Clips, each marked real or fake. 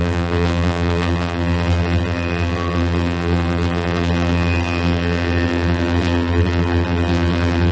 fake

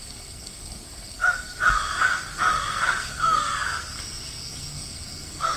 fake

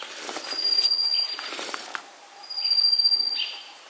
real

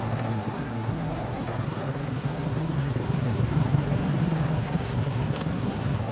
fake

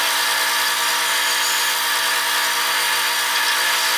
real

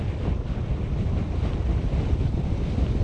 real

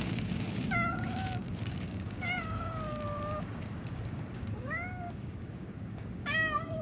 fake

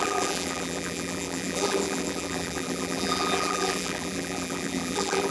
fake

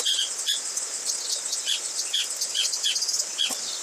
real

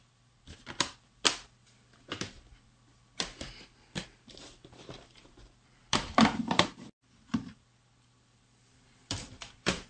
fake